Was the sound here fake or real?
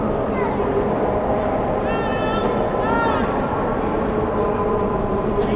real